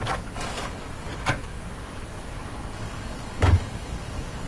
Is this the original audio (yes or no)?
no